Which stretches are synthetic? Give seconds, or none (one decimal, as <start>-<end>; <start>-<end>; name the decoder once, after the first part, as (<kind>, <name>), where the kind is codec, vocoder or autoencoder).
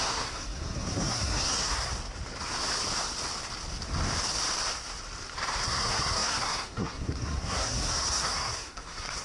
0.0-1.9 (codec, SNAC); 5.6-9.2